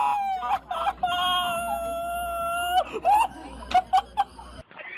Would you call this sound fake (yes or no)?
no